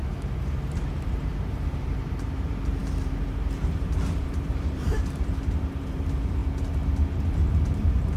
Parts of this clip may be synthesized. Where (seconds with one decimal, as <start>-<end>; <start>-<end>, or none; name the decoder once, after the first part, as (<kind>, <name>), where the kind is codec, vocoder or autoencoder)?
0.0-6.4 (vocoder, BigVGAN v2); 7.5-8.2